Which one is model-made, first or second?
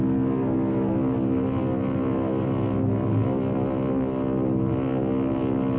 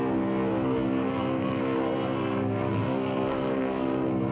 second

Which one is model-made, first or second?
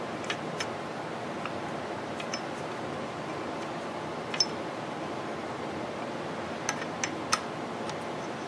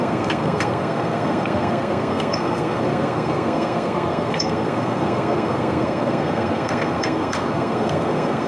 second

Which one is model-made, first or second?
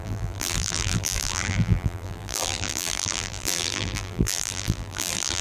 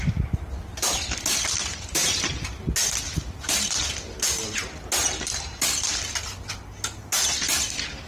first